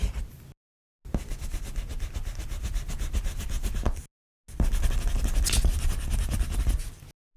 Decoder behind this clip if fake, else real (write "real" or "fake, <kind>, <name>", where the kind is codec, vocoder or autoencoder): real